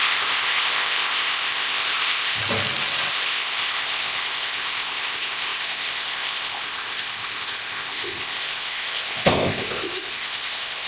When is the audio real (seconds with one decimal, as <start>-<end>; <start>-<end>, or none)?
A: 2.4-3.1